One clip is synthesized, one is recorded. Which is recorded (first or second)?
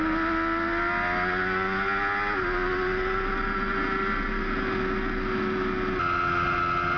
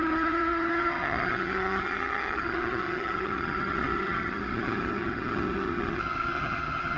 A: first